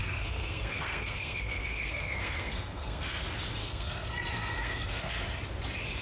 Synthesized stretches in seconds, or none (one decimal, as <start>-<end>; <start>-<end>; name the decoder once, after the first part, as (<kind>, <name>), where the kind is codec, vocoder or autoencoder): 0.0-3.2 (codec, SNAC); 3.6-5.1